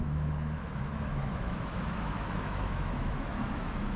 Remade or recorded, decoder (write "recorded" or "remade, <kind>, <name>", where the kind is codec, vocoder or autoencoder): remade, autoencoder, DAC-VAE